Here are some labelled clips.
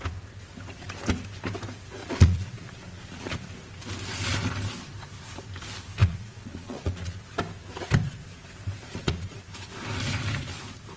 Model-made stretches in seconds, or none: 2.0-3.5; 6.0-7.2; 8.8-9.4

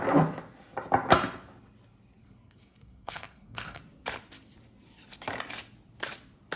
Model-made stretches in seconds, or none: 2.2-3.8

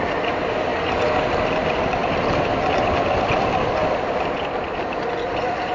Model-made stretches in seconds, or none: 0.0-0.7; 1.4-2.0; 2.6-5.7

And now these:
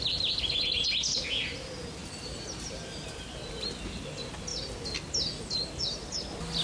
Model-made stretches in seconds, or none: none

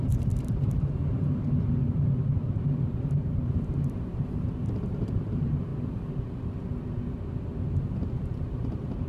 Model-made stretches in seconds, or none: 0.0-5.7; 7.7-9.1

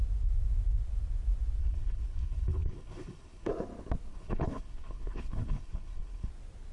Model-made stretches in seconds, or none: 1.6-3.5; 4.1-6.3